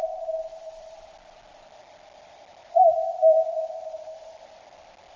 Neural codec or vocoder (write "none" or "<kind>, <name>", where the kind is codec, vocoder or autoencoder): none